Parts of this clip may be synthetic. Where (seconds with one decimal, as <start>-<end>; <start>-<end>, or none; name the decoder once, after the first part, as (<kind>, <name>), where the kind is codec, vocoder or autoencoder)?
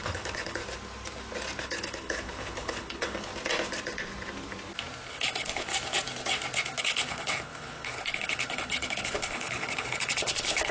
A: 0.0-0.6 (codec, HILCodec); 1.6-3.3; 5.1-5.7; 6.8-10.7